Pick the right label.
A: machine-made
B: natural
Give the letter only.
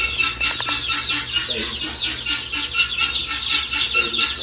B